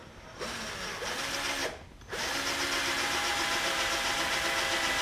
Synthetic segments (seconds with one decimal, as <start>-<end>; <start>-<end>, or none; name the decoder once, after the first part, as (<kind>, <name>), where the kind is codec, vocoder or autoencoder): 0.0-0.7 (vocoder, BigVGAN v2); 1.6-4.4